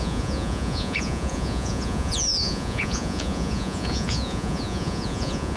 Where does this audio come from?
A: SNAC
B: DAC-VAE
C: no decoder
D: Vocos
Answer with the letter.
D